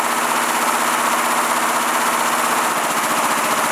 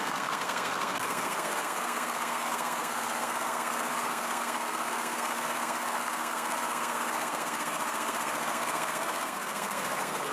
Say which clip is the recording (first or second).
first